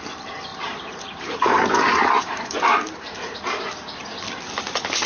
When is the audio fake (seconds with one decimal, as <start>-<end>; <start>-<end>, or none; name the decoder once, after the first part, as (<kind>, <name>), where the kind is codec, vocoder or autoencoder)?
0.5-3.4 (vocoder, BigVGAN v2)